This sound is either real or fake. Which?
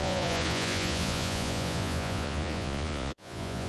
fake